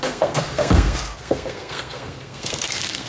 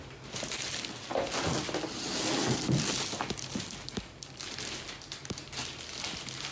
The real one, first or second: second